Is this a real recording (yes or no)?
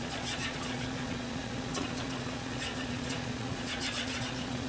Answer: no